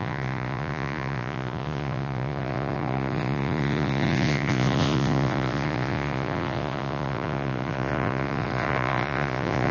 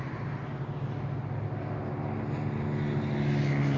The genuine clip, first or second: second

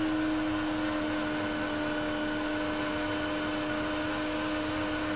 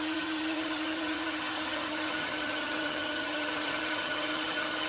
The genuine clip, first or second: first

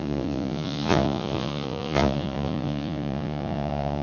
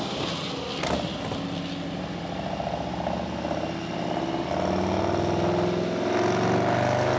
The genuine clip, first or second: second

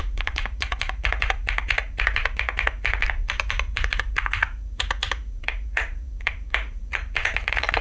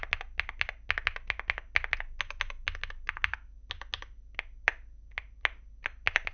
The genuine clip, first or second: second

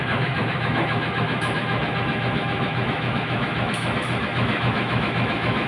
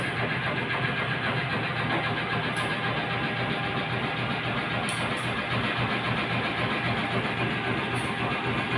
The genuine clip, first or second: second